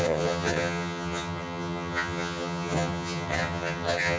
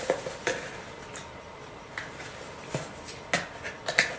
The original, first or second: second